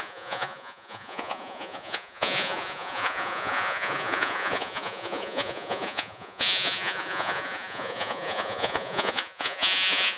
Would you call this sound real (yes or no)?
no